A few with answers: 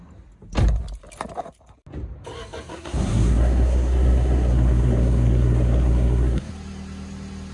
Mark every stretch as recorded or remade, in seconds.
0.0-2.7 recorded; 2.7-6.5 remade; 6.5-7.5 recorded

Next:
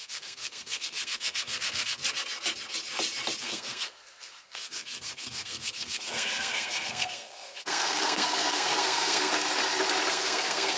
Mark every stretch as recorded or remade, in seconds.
0.0-2.0 remade; 2.0-3.4 recorded; 3.4-9.3 remade; 9.3-10.1 recorded; 10.1-10.8 remade

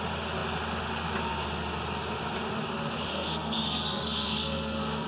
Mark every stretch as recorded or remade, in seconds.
0.0-3.1 recorded; 3.1-5.1 remade

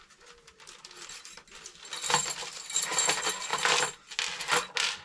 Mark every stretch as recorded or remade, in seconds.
0.0-5.0 recorded

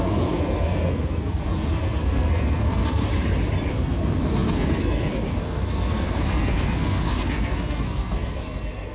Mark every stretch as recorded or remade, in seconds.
0.0-3.0 remade; 3.0-3.7 recorded; 3.7-8.9 remade

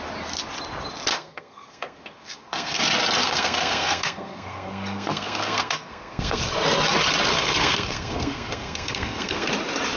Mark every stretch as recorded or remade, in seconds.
0.0-1.1 recorded; 1.1-2.8 remade; 2.8-3.2 recorded; 3.2-6.4 remade; 6.4-7.3 recorded; 7.3-9.5 remade; 9.5-10.0 recorded

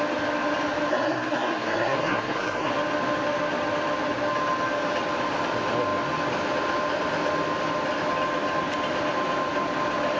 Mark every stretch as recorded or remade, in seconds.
0.0-0.9 recorded; 0.9-2.7 remade; 2.7-10.2 recorded